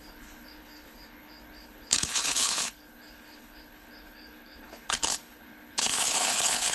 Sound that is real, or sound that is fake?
fake